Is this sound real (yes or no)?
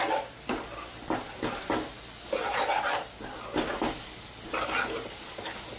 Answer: yes